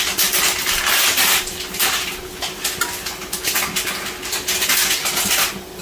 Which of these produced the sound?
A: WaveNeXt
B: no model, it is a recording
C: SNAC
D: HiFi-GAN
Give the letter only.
B